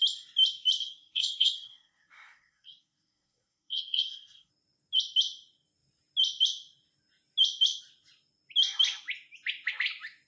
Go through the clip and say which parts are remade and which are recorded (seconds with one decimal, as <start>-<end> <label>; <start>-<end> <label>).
0.0-0.8 recorded; 0.8-4.5 remade; 4.5-10.3 recorded